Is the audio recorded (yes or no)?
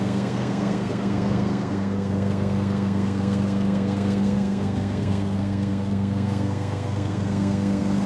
no